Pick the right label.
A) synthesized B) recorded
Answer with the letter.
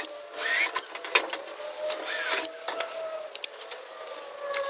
B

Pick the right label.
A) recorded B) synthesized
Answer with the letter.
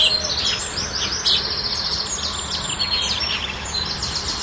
A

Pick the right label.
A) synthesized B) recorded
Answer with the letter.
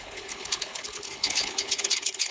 A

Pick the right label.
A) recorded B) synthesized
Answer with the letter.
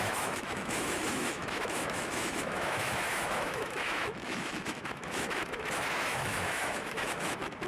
B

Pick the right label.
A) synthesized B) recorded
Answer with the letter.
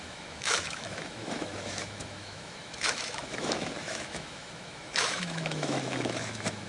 A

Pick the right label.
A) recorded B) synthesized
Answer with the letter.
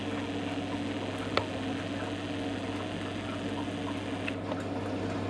A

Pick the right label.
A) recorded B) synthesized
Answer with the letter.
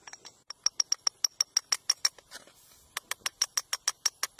A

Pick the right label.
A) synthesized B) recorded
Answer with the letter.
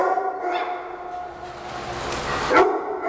B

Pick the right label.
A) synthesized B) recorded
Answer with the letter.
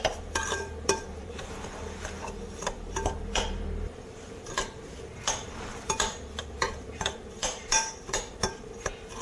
A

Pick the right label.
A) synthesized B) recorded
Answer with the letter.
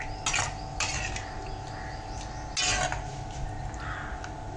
B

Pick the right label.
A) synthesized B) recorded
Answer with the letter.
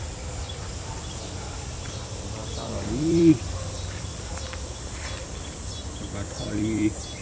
A